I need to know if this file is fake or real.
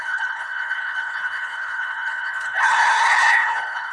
fake